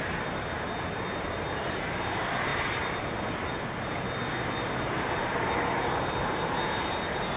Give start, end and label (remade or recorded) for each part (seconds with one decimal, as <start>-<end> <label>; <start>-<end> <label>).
0.0-7.4 recorded